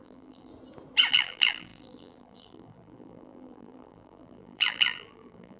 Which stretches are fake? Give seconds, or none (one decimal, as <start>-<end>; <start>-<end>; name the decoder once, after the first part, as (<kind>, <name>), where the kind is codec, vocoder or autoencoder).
0.0-0.5 (vocoder, BigVGAN v2); 1.1-5.6